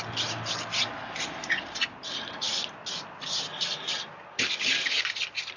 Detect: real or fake real